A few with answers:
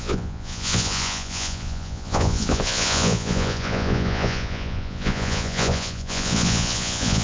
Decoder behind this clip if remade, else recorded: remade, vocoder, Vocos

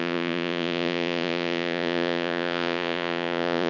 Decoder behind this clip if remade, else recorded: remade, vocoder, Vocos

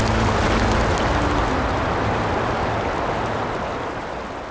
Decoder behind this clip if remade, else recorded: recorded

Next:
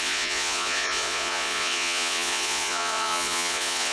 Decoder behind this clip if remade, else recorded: remade, vocoder, Vocos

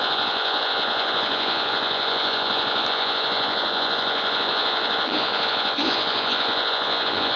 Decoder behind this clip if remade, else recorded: remade, vocoder, Vocos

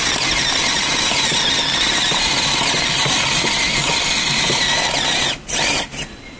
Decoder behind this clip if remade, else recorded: recorded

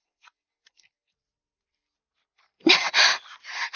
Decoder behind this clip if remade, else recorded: recorded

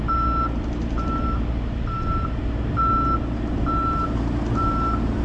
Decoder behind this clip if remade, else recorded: recorded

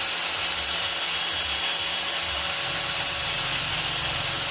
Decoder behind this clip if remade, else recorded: recorded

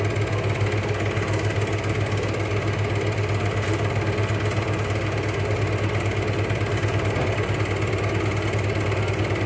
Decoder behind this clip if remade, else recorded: recorded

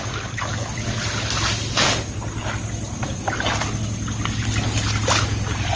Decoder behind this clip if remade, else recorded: recorded